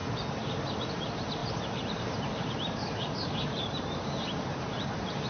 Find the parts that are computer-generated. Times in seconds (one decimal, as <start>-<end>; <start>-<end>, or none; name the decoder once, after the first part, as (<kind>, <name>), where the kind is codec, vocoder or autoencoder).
0.9-5.3 (vocoder, BigVGAN v2)